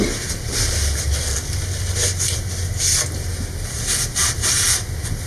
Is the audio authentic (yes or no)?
yes